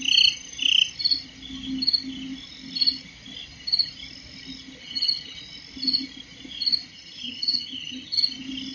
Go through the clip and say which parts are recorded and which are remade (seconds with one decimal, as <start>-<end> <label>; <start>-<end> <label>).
0.0-4.8 recorded; 4.8-5.4 remade; 5.4-6.9 recorded; 6.9-8.2 remade; 8.2-8.7 recorded